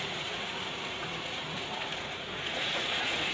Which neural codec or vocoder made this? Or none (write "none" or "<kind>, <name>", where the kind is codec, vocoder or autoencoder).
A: vocoder, Vocos